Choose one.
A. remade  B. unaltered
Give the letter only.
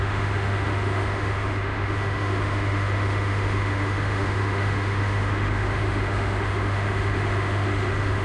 A